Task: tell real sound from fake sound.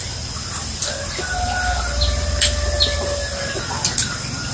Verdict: real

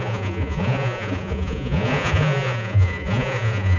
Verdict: fake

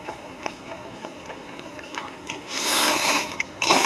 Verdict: fake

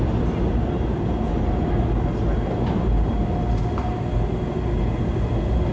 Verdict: real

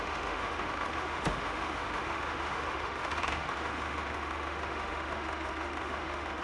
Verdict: fake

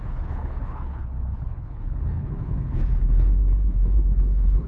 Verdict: fake